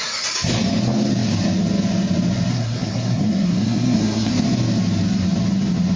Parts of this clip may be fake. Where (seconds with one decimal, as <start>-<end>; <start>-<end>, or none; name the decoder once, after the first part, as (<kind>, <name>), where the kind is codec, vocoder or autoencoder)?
2.5-4.3 (codec, SNAC)